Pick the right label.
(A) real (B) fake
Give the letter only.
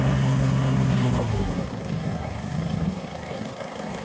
B